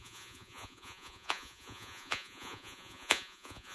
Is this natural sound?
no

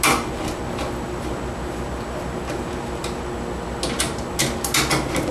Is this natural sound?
yes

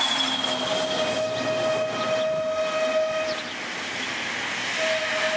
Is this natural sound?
yes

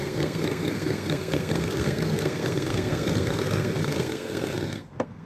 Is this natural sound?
no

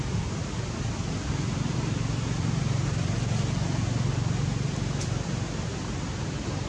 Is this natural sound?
yes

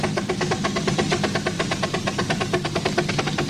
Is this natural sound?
yes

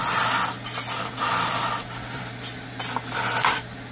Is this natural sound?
yes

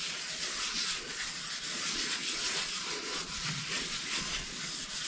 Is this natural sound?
no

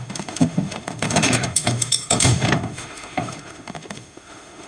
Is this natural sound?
no